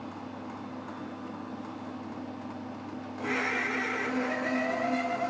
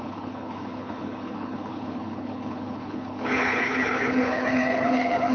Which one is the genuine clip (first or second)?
first